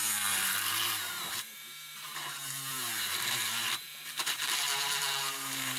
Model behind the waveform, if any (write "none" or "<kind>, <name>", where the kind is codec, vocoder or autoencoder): vocoder, BigVGAN v2